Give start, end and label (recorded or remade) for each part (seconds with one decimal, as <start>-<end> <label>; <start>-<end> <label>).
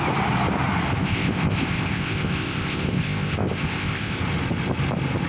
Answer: 0.0-1.0 recorded; 1.0-4.2 remade; 4.2-5.3 recorded